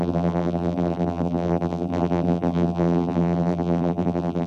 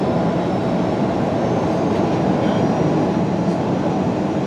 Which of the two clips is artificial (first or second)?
first